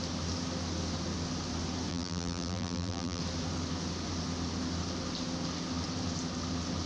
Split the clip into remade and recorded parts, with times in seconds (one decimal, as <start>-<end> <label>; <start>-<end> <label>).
0.0-1.9 recorded; 1.9-3.2 remade; 3.2-6.9 recorded